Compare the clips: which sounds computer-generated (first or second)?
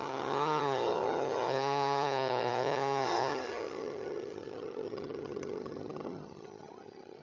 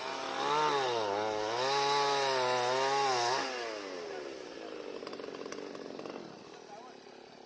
first